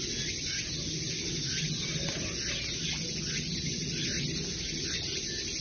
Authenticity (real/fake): real